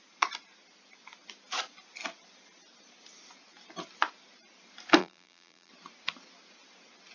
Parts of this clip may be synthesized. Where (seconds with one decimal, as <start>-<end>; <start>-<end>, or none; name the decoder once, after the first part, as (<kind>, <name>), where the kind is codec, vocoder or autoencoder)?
5.0-5.7 (vocoder, BigVGAN v2)